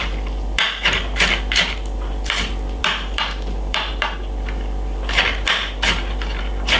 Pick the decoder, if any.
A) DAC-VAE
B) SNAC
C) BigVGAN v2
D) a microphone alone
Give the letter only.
C